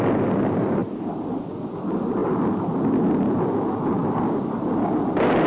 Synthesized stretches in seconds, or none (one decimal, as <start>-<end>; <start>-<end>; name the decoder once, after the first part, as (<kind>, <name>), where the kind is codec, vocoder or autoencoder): none

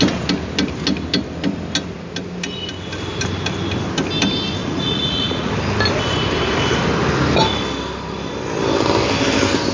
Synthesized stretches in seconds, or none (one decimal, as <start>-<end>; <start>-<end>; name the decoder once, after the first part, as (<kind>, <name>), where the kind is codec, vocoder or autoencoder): 4.6-5.5 (vocoder, Vocos)

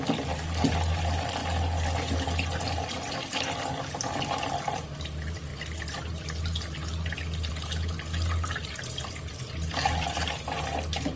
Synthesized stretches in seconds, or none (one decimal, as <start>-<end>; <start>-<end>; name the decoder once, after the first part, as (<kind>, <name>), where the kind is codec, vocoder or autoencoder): none

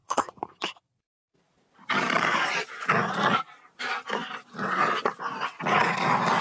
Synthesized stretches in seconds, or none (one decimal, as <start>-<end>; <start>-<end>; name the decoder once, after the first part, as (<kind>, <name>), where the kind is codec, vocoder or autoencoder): none

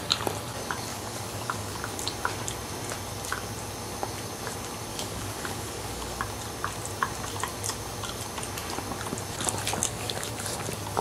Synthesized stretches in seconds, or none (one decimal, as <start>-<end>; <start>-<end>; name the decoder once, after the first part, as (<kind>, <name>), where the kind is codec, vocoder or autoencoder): 0.9-1.8 (codec, DAC); 4.9-6.2; 9.8-10.3

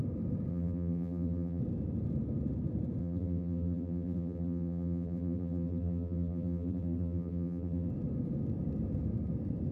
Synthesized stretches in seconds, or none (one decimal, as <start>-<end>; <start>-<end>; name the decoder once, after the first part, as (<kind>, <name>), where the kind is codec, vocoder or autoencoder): 0.5-1.6 (vocoder, BigVGAN v2); 3.0-7.9

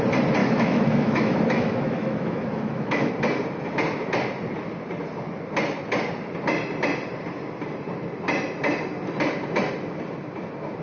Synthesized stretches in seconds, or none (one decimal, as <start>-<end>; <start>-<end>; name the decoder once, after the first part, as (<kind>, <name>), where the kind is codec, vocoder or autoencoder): 0.4-3.1 (autoencoder, DAC-VAE)

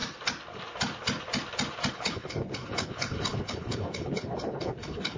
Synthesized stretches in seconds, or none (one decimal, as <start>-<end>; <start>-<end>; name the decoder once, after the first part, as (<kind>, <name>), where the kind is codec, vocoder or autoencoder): 1.9-5.2 (codec, HILCodec)